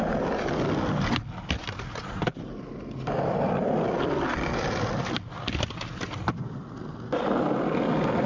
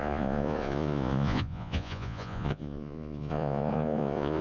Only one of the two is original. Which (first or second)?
first